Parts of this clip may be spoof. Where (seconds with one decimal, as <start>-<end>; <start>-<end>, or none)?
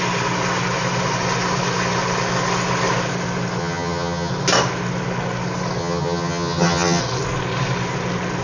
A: 3.6-4.3; 5.8-7.0